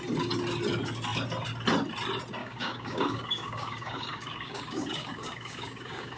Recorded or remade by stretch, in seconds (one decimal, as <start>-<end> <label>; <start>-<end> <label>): 0.0-2.4 recorded; 2.4-6.2 remade